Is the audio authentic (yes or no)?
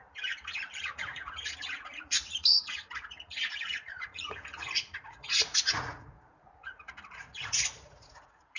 no